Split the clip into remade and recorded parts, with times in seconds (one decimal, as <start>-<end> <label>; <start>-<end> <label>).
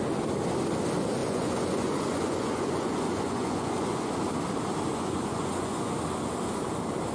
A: 0.0-1.2 recorded; 1.2-4.1 remade; 4.1-4.9 recorded; 4.9-6.0 remade; 6.0-7.1 recorded